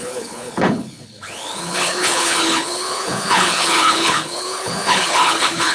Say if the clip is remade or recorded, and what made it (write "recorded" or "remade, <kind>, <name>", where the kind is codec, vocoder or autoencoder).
remade, codec, HILCodec